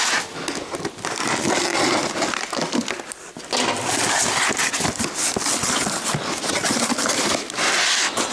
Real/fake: real